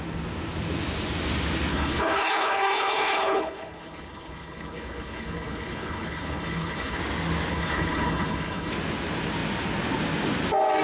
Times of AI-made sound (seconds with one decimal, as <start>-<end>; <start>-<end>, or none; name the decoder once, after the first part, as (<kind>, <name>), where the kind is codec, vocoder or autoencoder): 1.7-7.0 (codec, HILCodec); 7.5-8.7